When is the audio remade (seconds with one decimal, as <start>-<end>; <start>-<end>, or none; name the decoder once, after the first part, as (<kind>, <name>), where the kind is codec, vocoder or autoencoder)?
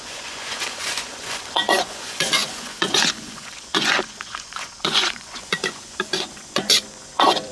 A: 0.0-7.5 (vocoder, Vocos)